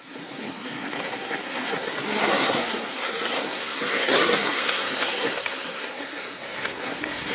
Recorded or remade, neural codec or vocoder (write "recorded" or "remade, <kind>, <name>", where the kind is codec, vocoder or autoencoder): remade, codec, SNAC